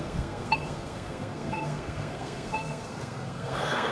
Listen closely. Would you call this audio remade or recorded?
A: remade